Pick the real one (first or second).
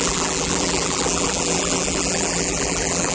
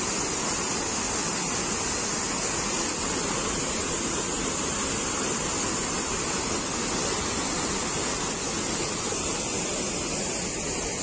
second